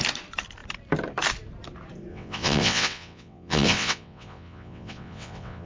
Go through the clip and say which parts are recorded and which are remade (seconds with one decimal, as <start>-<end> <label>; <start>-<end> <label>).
0.0-2.1 recorded; 2.1-5.7 remade